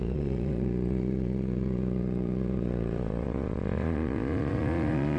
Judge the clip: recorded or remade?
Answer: remade